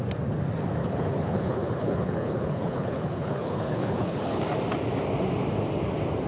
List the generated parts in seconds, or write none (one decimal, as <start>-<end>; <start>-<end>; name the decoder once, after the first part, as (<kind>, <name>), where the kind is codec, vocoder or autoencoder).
0.8-4.4 (codec, HILCodec)

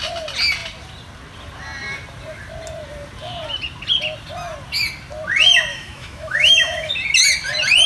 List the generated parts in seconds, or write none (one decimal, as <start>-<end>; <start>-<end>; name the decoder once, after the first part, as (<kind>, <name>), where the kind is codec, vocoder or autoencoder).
5.7-6.9 (autoencoder, DAC-VAE)

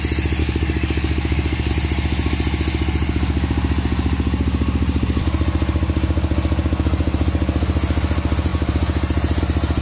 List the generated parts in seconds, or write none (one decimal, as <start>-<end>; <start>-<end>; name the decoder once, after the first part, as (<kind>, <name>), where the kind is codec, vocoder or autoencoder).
0.4-1.7 (codec, DAC)

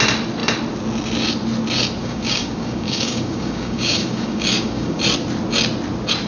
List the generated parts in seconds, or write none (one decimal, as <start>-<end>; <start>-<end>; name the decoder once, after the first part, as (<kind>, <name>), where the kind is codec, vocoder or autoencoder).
2.0-5.0 (codec, DAC)

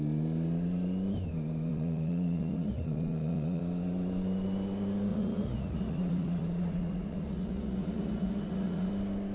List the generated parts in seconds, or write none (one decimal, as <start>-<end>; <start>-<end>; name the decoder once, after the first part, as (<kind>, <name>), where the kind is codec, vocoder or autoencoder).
1.7-3.6 (vocoder, Vocos); 5.1-8.9

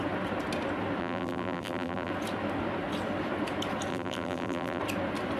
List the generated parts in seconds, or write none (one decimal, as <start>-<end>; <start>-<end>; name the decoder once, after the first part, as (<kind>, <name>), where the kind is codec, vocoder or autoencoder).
1.0-2.1 (vocoder, BigVGAN v2); 3.9-4.8

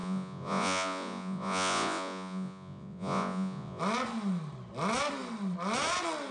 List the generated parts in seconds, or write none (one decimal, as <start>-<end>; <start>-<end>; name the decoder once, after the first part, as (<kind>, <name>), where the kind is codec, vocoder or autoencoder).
0.0-3.8 (vocoder, Vocos)